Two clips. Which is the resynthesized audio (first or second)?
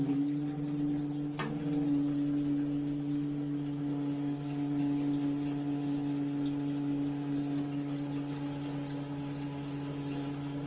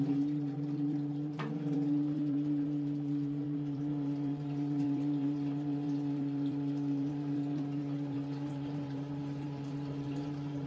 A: second